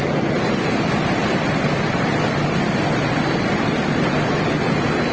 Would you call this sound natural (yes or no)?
yes